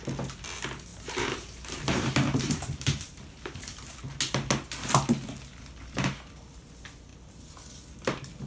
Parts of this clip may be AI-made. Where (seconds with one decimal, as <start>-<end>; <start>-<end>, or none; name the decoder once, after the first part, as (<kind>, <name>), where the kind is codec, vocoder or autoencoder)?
0.9-4.0 (vocoder, BigVGAN v2)